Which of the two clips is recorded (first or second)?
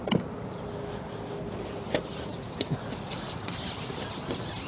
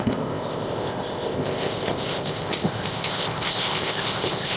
first